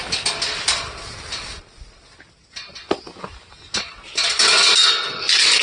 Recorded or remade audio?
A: recorded